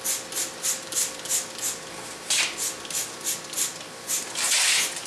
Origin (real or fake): real